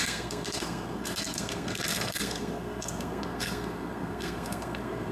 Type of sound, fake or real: fake